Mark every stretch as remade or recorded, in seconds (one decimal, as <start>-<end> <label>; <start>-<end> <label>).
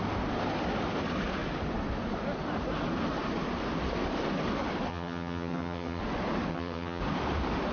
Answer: 0.0-4.9 recorded; 4.9-6.0 remade; 6.0-6.5 recorded; 6.5-7.0 remade; 7.0-7.7 recorded